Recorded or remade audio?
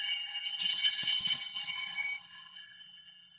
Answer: remade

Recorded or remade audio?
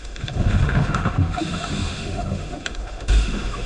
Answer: remade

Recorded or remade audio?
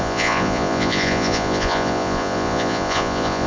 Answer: remade